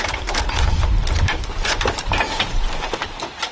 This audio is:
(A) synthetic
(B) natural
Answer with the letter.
A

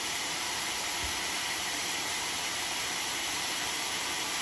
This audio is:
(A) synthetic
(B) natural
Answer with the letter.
A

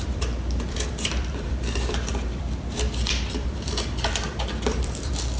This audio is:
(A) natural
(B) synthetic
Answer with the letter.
B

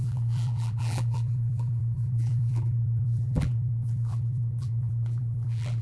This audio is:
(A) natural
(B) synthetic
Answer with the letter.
B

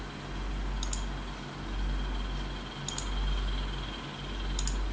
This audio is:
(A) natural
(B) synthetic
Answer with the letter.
A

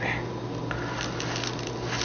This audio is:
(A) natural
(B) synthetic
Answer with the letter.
A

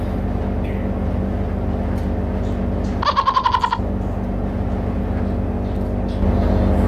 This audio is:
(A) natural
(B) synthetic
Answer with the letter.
A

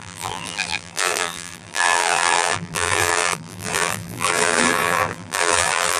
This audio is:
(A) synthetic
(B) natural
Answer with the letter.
A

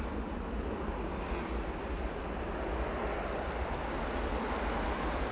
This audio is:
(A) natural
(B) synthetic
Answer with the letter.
A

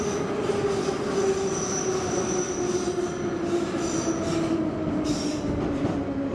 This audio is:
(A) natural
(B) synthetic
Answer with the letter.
A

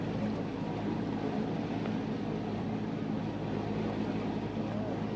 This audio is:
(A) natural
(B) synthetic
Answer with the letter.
A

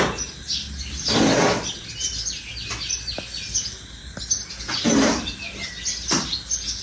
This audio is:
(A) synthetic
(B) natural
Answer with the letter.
B